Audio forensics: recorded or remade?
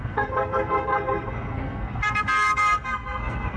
remade